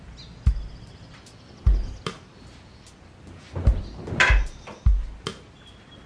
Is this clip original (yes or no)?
yes